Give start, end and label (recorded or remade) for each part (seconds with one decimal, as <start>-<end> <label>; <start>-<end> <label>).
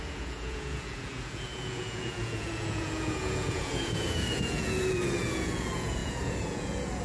0.0-7.0 remade